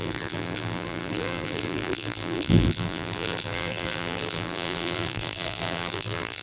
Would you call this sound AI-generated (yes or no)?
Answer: yes